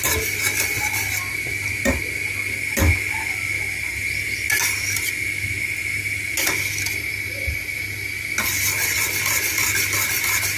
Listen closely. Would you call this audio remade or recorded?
recorded